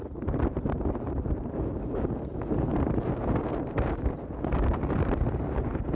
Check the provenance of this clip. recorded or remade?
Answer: remade